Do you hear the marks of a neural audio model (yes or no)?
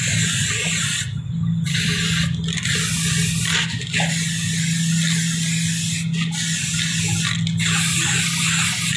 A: no